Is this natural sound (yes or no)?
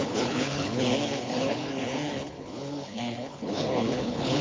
no